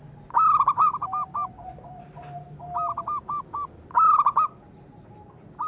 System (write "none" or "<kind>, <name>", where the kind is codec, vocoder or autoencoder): none